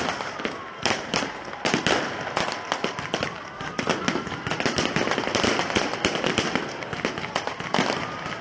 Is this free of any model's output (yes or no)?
yes